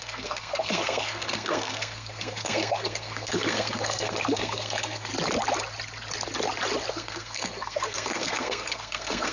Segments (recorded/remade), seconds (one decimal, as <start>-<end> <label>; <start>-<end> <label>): 0.0-5.1 remade; 5.1-6.9 recorded; 6.9-9.3 remade